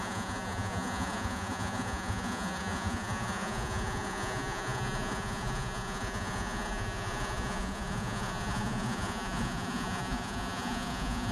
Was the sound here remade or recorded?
remade